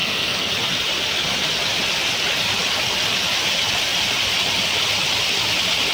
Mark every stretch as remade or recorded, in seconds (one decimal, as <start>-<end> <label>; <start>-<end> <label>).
0.0-0.5 remade; 0.5-5.9 recorded